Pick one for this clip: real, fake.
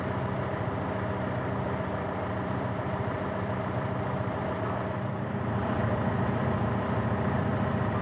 fake